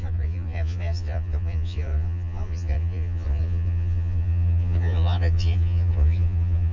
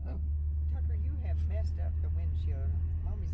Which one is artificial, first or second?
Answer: first